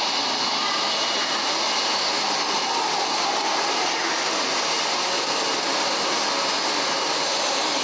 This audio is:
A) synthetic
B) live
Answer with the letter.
B